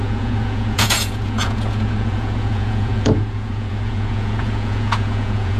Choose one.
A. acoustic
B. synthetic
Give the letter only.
B